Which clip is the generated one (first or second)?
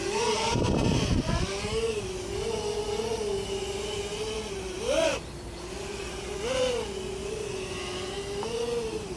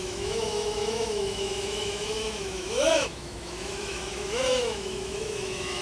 second